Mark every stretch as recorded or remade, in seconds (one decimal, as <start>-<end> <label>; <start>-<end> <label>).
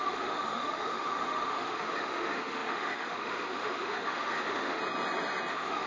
0.0-4.8 remade; 4.8-5.5 recorded; 5.5-5.9 remade